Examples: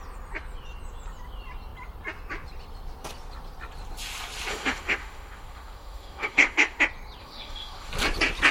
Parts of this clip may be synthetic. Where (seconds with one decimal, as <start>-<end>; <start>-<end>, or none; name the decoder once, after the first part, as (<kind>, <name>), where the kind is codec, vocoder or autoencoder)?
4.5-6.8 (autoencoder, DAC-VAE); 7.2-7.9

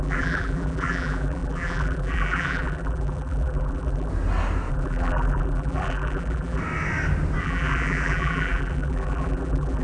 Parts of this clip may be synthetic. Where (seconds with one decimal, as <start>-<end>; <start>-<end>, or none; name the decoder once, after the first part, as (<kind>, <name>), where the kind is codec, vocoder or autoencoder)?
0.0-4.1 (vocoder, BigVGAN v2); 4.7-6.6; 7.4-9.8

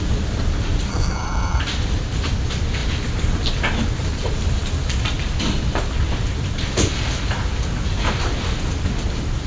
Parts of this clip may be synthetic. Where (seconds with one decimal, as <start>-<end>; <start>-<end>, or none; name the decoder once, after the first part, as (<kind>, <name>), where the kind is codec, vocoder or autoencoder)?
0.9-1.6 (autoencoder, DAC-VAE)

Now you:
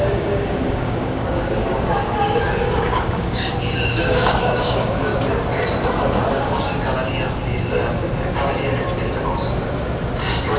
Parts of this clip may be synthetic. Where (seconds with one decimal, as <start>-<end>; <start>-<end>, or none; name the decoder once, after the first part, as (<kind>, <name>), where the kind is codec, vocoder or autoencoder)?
0.0-5.1 (codec, DAC); 6.3-6.7

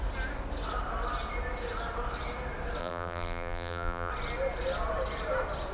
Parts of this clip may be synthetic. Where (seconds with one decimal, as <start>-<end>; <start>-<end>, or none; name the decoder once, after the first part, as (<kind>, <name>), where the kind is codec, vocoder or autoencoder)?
2.8-4.1 (vocoder, BigVGAN v2)